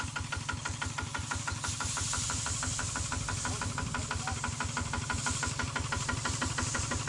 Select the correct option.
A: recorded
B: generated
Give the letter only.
A